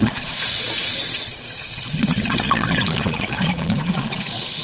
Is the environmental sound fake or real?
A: fake